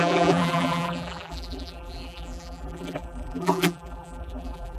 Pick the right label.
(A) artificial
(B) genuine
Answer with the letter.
A